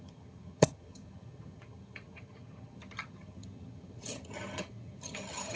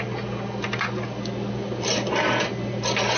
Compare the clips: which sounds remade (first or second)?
first